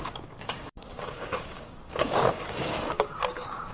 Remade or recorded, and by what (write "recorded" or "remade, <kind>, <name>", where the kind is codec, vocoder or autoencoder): remade, codec, DAC